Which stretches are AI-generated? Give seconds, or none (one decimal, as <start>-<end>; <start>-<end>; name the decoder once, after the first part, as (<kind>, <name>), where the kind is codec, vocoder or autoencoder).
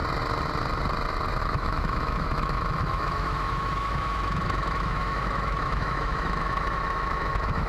1.4-7.7 (autoencoder, DAC-VAE)